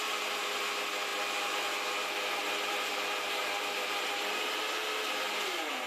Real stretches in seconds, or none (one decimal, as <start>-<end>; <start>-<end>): 0.0-5.9